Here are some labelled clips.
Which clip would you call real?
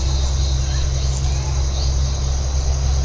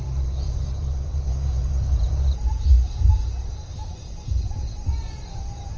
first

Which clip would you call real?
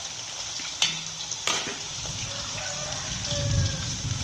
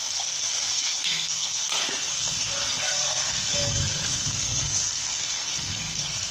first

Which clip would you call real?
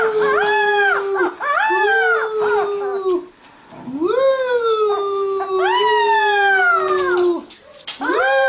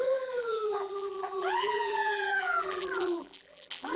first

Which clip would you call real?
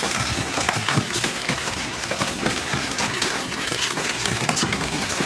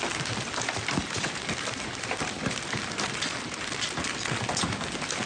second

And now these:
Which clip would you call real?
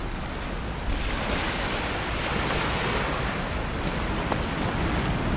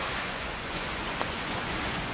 first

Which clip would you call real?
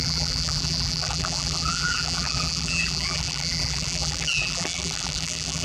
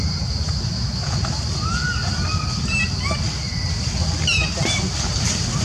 second